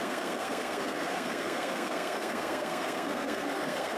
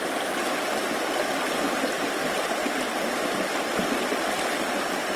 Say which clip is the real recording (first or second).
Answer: second